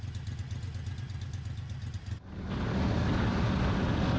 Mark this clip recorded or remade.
recorded